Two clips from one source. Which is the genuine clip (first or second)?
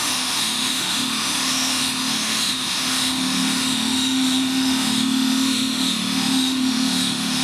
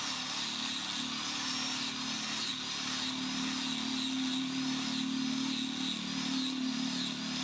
second